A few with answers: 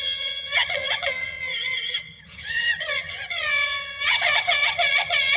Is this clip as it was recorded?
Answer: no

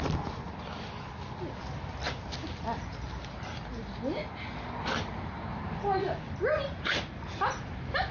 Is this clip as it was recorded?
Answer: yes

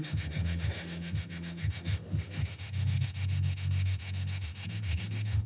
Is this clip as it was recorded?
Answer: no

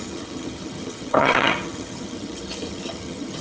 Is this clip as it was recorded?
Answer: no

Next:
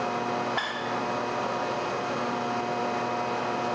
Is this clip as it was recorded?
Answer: yes